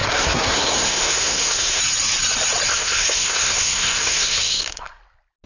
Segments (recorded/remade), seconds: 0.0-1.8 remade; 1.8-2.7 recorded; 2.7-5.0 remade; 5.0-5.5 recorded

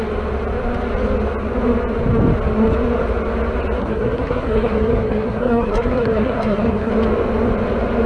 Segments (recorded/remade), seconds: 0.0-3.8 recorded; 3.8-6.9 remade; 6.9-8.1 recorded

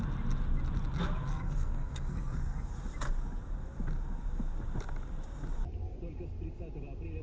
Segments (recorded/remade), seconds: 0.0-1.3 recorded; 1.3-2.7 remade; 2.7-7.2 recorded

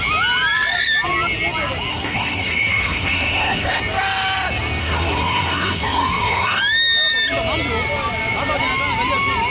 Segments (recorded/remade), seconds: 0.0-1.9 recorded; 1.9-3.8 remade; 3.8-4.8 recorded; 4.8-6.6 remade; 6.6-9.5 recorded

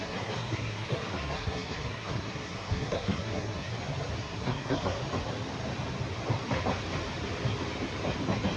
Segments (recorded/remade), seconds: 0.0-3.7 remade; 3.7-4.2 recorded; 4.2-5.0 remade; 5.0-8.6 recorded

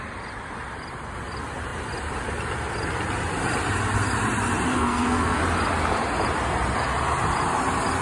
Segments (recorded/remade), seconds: 0.0-4.7 recorded; 4.7-5.4 remade; 5.4-8.0 recorded